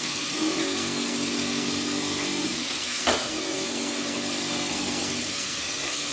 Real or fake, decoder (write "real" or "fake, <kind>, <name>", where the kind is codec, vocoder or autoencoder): fake, codec, SNAC